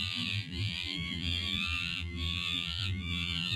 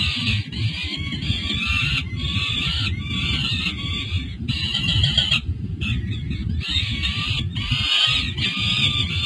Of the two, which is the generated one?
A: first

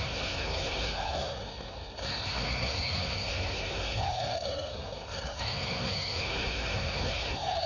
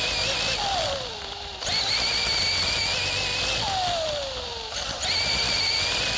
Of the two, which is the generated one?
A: first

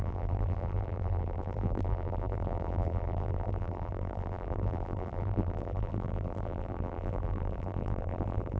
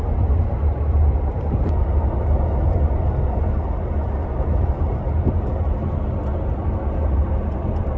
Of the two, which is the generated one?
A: first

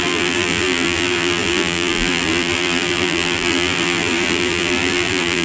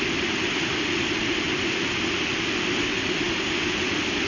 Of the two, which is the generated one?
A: first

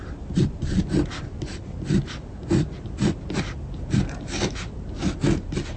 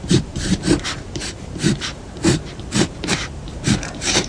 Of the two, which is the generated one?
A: second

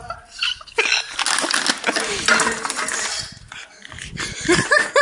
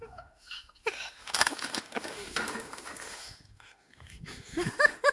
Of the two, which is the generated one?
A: second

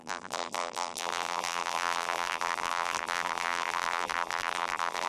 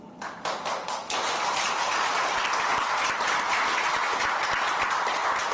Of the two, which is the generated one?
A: first